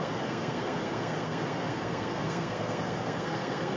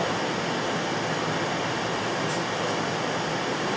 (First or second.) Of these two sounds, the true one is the second